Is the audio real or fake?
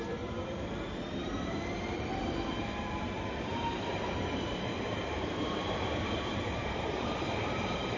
fake